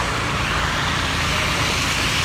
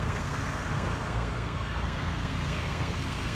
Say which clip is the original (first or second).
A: first